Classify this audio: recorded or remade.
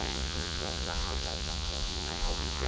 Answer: remade